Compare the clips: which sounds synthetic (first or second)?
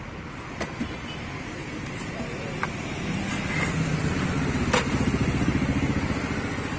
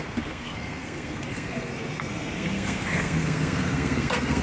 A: second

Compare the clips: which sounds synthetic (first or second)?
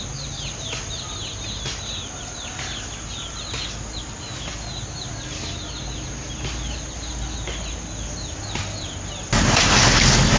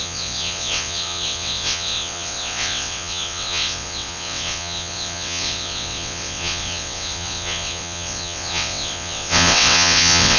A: second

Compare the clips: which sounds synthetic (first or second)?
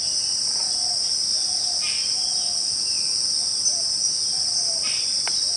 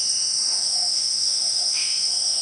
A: second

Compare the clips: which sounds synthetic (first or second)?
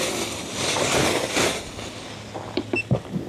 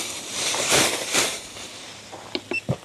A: second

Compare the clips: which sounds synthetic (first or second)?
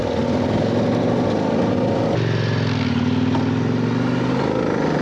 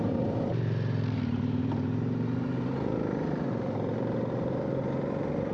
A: second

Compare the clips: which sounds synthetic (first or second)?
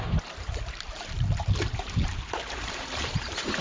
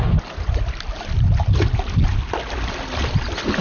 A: first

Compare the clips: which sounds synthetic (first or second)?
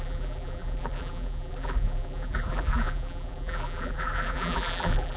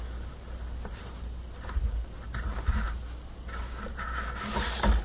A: first